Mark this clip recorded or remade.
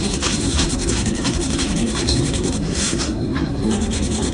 remade